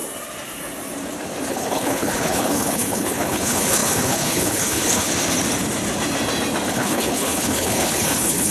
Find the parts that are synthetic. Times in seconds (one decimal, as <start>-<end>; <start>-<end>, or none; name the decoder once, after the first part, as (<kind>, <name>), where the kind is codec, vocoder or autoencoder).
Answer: 1.5-5.1 (codec, HILCodec); 6.7-8.5